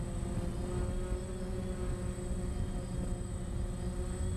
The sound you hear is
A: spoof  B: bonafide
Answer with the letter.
B